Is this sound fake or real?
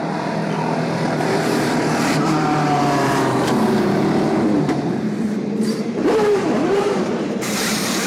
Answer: fake